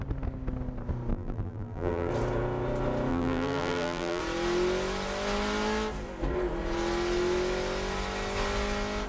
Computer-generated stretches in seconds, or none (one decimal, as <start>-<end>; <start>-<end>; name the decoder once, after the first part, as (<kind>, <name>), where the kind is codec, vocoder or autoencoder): 1.1-2.1 (vocoder, BigVGAN v2); 3.1-4.2